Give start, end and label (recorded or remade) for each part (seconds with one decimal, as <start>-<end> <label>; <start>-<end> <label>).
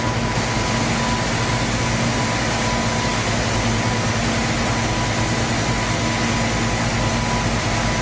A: 0.0-8.0 recorded